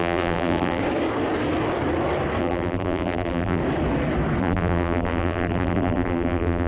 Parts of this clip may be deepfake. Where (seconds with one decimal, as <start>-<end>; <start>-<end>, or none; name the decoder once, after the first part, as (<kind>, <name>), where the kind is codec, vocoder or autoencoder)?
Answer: 0.0-0.8 (vocoder, BigVGAN v2); 2.4-3.6; 4.4-6.7